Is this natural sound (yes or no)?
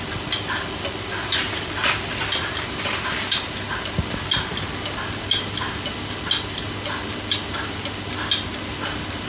yes